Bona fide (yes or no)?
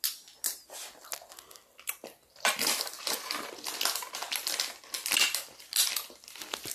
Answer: yes